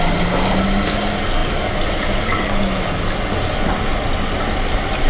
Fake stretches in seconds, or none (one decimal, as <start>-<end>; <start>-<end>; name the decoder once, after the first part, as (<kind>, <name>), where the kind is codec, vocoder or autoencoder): none